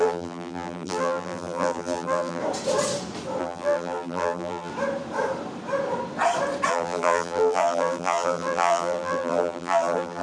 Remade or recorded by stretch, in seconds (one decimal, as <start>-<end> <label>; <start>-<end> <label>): 0.0-2.4 remade; 2.4-3.4 recorded; 3.4-4.7 remade; 4.7-6.7 recorded; 6.7-10.2 remade